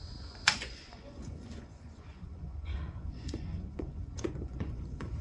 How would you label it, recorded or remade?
remade